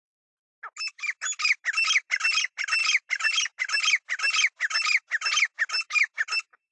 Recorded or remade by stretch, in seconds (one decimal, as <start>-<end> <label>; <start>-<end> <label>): 0.0-6.7 recorded